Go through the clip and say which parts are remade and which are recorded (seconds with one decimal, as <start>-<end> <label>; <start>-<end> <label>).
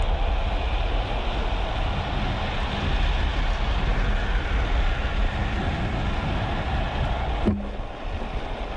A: 0.0-8.8 recorded